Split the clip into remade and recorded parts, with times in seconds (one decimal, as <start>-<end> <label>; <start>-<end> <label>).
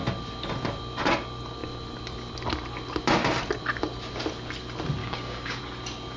0.0-5.0 recorded; 5.0-5.6 remade; 5.6-6.2 recorded